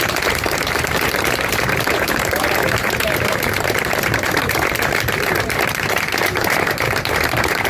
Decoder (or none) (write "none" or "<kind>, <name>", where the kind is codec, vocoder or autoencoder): vocoder, BigVGAN v2